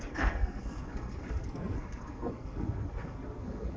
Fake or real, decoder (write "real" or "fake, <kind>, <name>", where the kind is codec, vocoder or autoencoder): fake, codec, SNAC